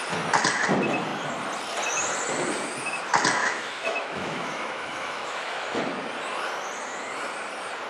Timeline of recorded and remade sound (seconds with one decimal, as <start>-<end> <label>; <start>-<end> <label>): 0.0-3.4 recorded; 3.4-5.8 remade; 5.8-7.9 recorded